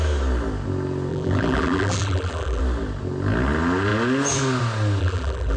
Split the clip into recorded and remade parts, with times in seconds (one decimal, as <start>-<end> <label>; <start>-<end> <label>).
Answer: 0.0-1.1 recorded; 1.1-2.6 remade; 2.6-5.0 recorded; 5.0-5.6 remade